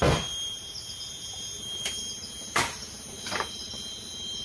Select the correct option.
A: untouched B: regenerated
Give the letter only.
B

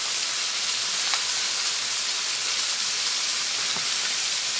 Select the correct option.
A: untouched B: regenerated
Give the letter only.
B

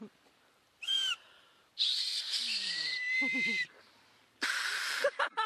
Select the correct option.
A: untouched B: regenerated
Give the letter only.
B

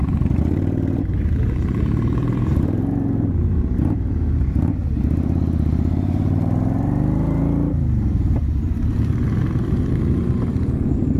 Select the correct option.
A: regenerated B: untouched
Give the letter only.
A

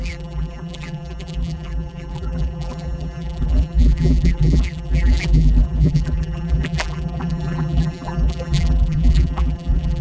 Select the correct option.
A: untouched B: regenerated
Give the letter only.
B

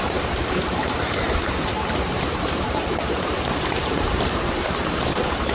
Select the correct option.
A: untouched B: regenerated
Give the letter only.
B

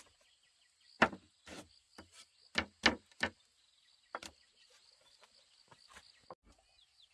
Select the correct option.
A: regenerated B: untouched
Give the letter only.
B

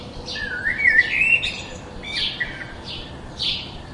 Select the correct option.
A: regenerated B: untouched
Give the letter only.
A